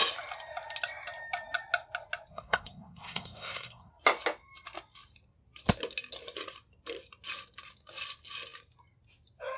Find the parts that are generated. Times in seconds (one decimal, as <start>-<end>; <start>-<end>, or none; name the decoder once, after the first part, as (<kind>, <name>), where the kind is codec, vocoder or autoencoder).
2.3-3.9 (codec, SNAC)